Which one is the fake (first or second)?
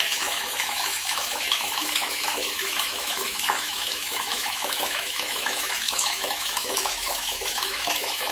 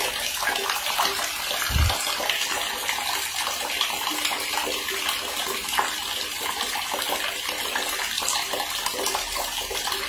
first